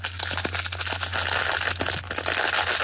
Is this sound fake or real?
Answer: real